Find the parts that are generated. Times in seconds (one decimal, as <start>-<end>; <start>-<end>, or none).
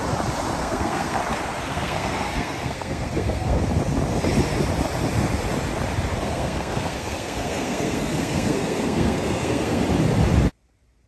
0.6-1.2; 1.7-3.6; 6.1-9.8